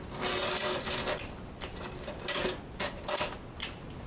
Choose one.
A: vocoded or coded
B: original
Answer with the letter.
B